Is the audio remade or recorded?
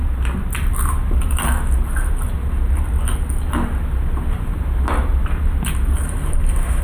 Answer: recorded